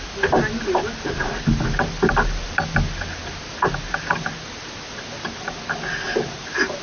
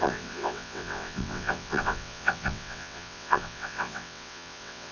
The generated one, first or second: second